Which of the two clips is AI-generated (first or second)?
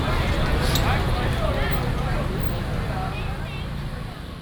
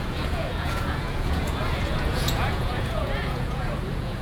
second